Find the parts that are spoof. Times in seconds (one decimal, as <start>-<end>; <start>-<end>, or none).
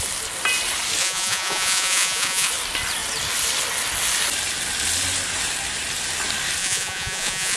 1.0-2.5; 6.6-7.6